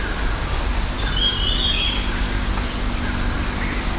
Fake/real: real